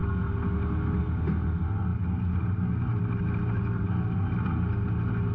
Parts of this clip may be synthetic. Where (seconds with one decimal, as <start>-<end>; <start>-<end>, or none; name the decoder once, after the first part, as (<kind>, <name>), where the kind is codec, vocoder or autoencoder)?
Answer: none